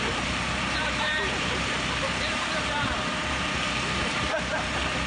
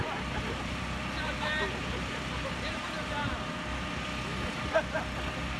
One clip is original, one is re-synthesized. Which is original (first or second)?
second